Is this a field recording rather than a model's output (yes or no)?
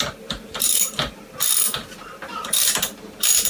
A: no